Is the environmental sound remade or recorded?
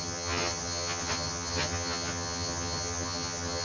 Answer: remade